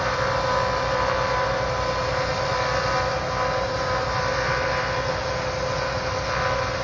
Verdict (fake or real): real